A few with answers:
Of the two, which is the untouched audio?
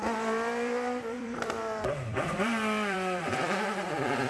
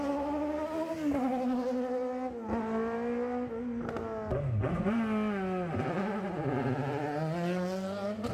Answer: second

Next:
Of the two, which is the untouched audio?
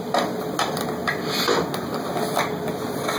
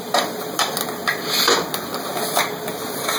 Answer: first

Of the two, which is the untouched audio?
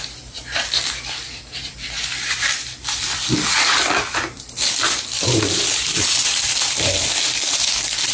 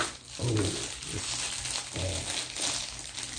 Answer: second